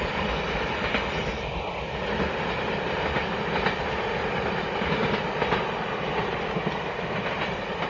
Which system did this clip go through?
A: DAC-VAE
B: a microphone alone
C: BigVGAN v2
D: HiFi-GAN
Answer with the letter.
B